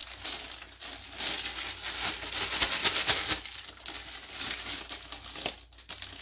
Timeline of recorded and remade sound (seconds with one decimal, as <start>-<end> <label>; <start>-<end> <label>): 0.0-6.2 recorded